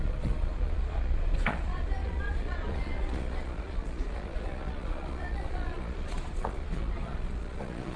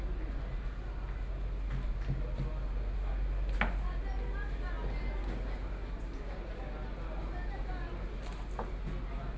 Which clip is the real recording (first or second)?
second